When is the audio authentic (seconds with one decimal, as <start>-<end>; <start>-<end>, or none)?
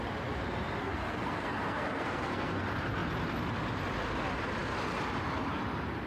0.0-0.8; 2.6-6.1